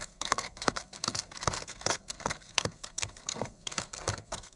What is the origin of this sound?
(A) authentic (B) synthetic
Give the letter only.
B